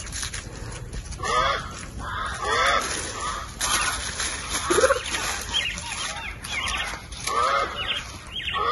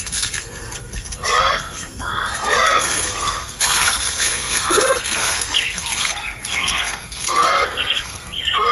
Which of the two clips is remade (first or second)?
second